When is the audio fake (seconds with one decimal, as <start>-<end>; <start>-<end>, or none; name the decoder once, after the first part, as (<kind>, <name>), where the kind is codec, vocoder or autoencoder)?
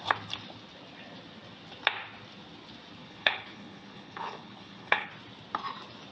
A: 3.0-5.1 (codec, HILCodec)